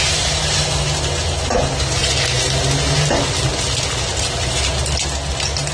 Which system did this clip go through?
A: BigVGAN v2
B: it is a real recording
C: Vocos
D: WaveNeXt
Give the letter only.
B